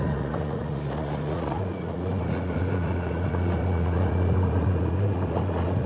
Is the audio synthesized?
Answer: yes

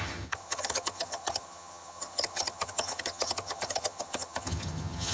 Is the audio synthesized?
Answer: yes